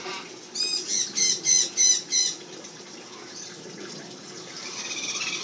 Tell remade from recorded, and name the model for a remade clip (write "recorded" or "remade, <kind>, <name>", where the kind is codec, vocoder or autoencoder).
recorded